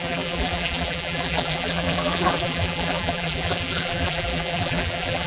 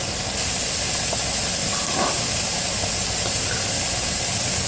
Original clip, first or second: second